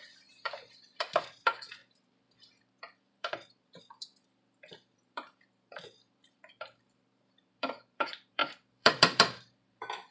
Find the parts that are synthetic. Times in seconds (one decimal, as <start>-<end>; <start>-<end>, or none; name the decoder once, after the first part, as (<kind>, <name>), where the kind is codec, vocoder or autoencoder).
0.0-10.1 (vocoder, BigVGAN v2)